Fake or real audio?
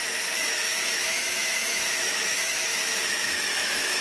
fake